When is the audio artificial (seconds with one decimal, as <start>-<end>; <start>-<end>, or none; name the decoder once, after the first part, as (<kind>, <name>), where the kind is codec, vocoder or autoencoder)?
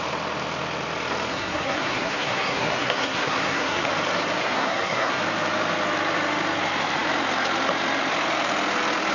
1.3-3.9 (codec, SNAC); 4.4-5.2